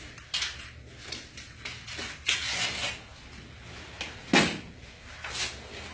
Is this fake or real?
real